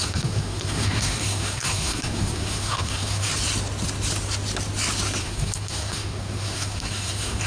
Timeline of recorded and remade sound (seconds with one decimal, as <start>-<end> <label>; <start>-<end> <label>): 0.0-3.3 remade; 3.3-5.2 recorded; 5.2-7.5 remade